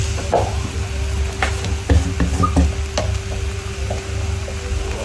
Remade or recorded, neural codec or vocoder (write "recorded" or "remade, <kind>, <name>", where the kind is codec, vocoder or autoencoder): recorded